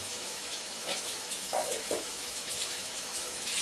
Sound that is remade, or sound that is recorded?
remade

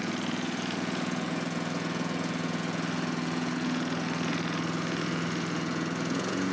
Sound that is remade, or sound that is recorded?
remade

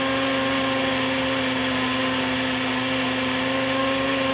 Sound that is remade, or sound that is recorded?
recorded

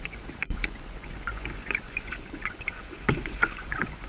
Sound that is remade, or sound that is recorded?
remade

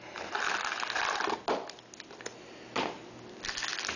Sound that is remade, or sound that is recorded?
recorded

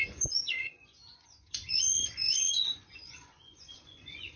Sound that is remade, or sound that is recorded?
remade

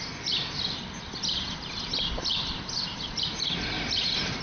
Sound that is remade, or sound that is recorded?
recorded